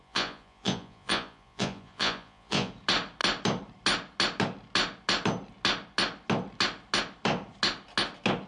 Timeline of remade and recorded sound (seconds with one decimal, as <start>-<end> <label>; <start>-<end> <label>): 0.0-2.7 remade; 2.7-8.5 recorded

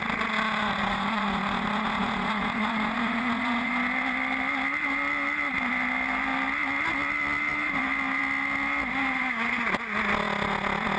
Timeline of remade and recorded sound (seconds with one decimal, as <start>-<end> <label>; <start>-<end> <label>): 0.0-0.6 recorded; 0.6-3.7 remade; 3.7-11.0 recorded

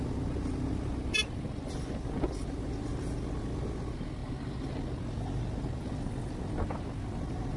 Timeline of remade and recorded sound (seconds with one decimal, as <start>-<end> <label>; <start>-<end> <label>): 0.0-7.6 recorded

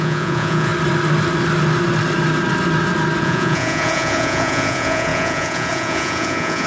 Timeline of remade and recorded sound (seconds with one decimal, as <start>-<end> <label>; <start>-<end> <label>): 0.0-0.7 remade; 0.7-3.2 recorded; 3.2-6.7 remade